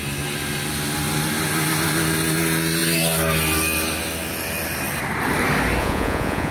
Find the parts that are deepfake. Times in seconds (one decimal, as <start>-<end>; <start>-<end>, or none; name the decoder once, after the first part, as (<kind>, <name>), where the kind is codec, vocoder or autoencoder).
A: 5.8-6.5 (vocoder, Vocos)